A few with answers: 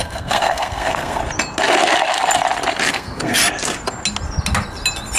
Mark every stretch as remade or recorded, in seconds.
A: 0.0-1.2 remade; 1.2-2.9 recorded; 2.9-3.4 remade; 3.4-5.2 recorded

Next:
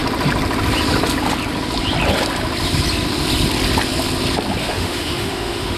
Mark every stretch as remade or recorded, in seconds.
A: 0.0-4.6 recorded; 4.6-5.8 remade

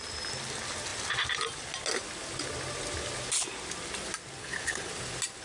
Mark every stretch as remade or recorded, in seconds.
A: 0.0-4.4 recorded; 4.4-4.9 remade; 4.9-5.4 recorded

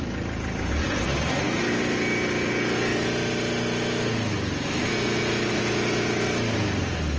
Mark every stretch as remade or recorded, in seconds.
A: 0.0-7.2 recorded

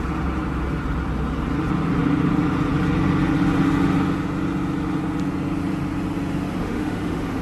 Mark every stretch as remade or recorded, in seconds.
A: 0.0-6.6 recorded; 6.6-7.4 remade

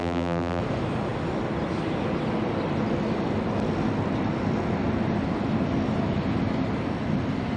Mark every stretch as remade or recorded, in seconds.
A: 0.0-0.6 remade; 0.6-7.6 recorded

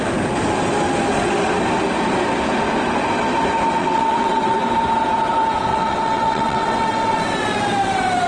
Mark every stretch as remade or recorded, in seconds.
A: 0.0-3.8 recorded; 3.8-4.6 remade; 4.6-5.7 recorded; 5.7-7.2 remade; 7.2-8.3 recorded